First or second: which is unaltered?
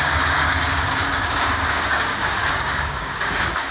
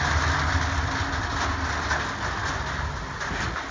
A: second